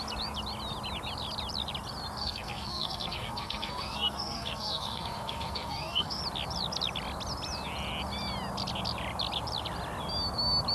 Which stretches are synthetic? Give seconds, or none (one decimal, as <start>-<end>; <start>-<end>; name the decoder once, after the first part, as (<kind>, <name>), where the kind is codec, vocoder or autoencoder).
2.2-6.2 (codec, SNAC)